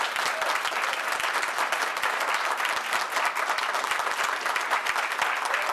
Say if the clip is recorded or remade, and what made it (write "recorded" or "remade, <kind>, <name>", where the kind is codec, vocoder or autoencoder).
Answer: recorded